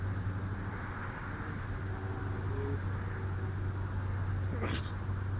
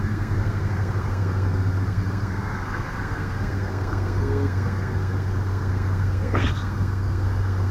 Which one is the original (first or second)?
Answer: first